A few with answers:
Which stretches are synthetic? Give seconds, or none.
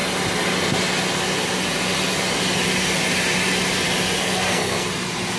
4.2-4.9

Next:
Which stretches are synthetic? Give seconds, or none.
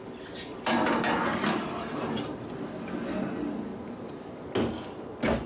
1.3-2.5; 3.7-4.2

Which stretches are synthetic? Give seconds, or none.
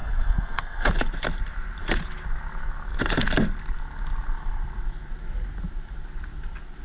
0.0-0.9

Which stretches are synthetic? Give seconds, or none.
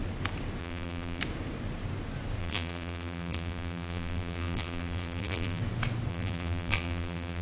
0.6-1.2; 2.4-5.6; 6.1-7.4